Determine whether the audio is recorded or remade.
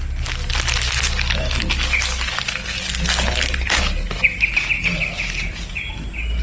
recorded